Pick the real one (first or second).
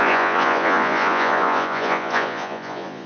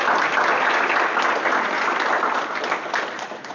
second